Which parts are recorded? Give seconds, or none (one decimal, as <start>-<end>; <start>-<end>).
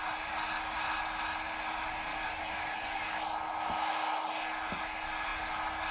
0.0-2.1; 3.2-5.9